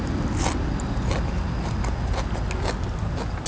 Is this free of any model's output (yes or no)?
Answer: yes